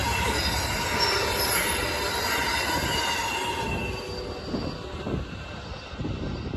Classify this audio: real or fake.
real